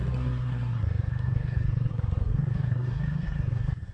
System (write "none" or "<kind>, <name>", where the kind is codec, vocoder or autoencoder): codec, SNAC